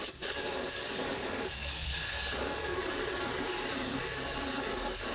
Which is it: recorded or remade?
remade